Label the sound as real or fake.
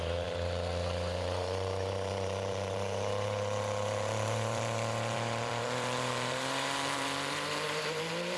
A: fake